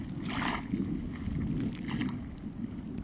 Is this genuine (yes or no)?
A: yes